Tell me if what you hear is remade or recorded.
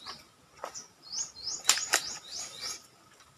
recorded